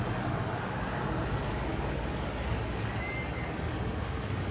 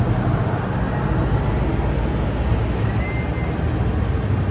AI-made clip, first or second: first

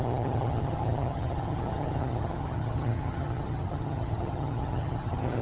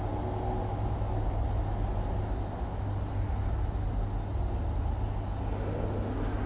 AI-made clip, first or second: first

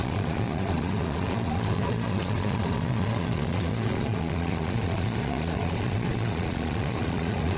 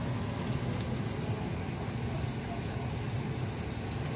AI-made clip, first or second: first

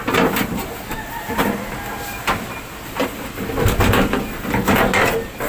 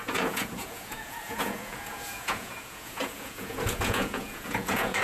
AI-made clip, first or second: second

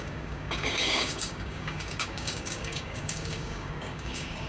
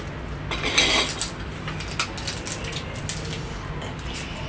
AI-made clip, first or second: first